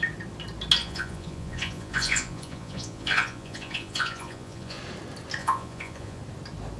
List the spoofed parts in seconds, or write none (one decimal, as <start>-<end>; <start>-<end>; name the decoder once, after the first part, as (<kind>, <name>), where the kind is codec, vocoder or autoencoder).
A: 0.8-4.8 (vocoder, Vocos); 5.4-6.2